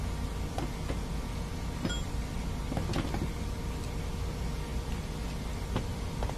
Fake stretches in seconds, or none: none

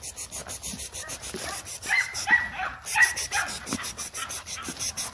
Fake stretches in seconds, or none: none

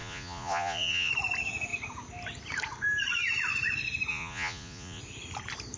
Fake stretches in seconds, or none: 0.0-1.1 (vocoder, Vocos); 4.1-5.0